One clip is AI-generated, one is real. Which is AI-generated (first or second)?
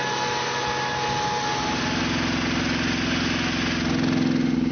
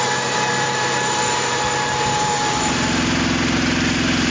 second